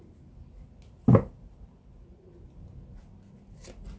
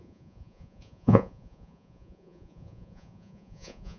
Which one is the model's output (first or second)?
second